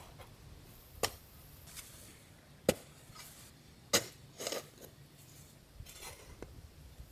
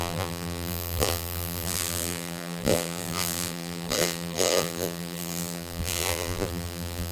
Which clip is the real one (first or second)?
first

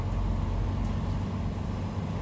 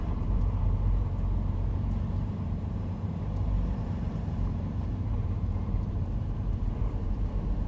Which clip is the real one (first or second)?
first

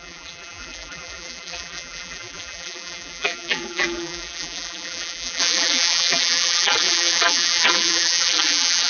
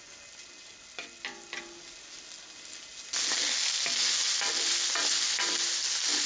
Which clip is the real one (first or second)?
second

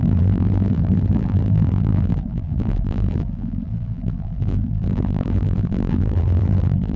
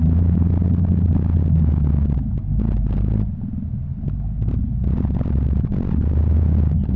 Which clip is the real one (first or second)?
second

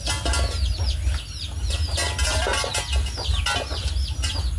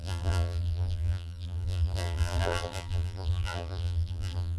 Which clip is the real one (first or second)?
first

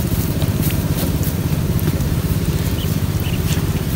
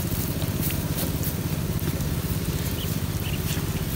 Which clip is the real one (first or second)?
second